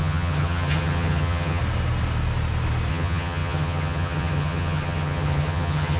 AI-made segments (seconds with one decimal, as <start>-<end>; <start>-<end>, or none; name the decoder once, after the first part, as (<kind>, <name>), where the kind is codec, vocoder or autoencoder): 0.0-1.6 (vocoder, HiFi-GAN); 2.9-6.0